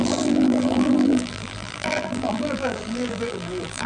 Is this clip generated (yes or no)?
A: yes